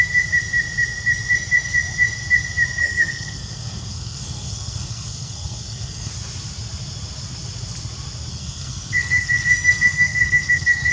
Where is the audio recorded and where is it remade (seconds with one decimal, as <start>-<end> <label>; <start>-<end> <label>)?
0.0-2.8 recorded; 2.8-6.1 remade; 6.1-8.3 recorded; 8.3-10.9 remade